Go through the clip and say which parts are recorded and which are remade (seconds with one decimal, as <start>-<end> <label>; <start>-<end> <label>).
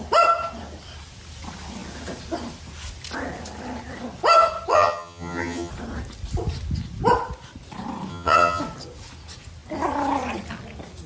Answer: 0.0-4.7 recorded; 4.7-5.7 remade; 5.7-8.1 recorded; 8.1-8.6 remade; 8.6-11.1 recorded